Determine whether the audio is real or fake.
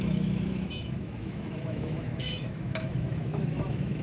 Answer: fake